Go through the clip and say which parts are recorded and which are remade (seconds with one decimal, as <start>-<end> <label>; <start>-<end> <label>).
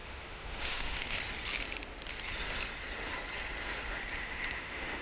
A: 0.0-1.2 remade; 1.2-4.2 recorded; 4.2-5.0 remade